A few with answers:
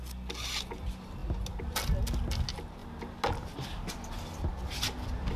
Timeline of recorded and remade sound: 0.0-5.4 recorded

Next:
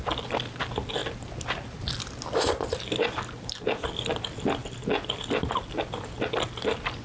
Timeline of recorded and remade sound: 0.0-7.0 recorded

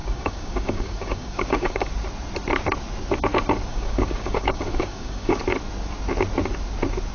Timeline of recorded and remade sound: 0.0-1.9 remade; 1.9-3.7 recorded; 3.7-5.4 remade; 5.4-7.1 recorded

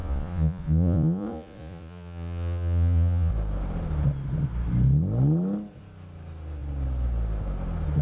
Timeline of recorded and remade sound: 0.0-3.3 remade; 3.3-8.0 recorded

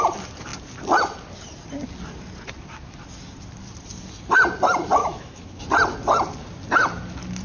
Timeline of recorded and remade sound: 0.0-5.0 recorded; 5.0-5.6 remade; 5.6-7.4 recorded

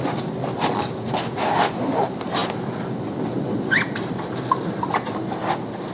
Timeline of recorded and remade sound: 0.0-5.9 recorded

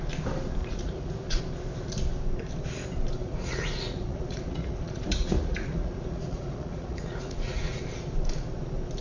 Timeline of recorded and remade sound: 0.0-0.6 recorded; 0.6-1.4 remade; 1.4-3.2 recorded; 3.2-7.8 remade; 7.8-9.0 recorded

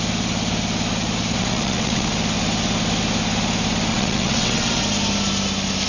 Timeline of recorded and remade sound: 0.0-1.4 recorded; 1.4-2.1 remade; 2.1-3.9 recorded; 3.9-4.8 remade; 4.8-5.9 recorded